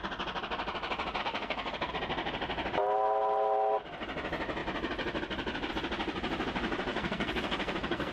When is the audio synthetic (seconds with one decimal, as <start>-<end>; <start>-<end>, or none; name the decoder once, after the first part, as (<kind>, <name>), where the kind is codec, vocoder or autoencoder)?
1.2-1.9 (codec, SNAC); 6.9-8.1